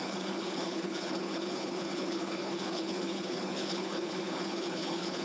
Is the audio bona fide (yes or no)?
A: no